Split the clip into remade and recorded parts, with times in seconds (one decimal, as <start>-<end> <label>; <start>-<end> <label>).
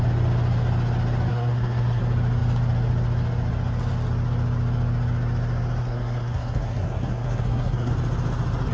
0.0-1.3 recorded; 1.3-2.0 remade; 2.0-5.8 recorded; 5.8-7.9 remade; 7.9-8.7 recorded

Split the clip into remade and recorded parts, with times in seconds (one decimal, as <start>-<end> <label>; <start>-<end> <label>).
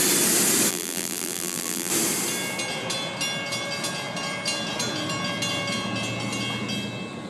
0.0-0.7 recorded; 0.7-1.9 remade; 1.9-7.3 recorded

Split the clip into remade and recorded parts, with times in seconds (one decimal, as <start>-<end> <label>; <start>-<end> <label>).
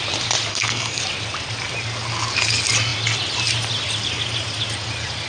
0.0-0.5 recorded; 0.5-1.0 remade; 1.0-5.3 recorded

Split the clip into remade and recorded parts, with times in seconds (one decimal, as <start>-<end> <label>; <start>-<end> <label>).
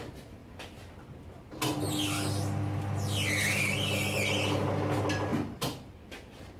0.0-0.4 recorded; 0.4-1.6 remade; 1.6-6.6 recorded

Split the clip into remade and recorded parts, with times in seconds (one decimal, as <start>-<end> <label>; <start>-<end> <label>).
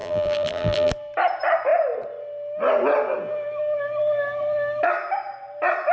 0.0-0.9 remade; 0.9-5.9 recorded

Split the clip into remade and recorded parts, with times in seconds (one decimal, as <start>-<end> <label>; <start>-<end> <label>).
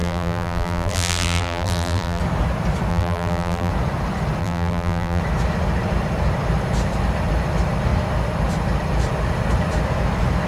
0.0-2.2 remade; 2.2-2.9 recorded; 2.9-3.7 remade; 3.7-4.4 recorded; 4.4-5.2 remade; 5.2-10.5 recorded